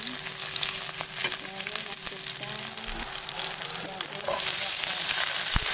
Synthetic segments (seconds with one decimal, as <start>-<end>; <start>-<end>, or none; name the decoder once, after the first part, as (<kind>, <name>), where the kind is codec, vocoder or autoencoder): none